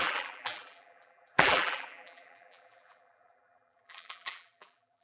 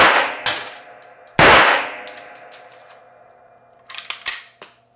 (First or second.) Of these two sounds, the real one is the second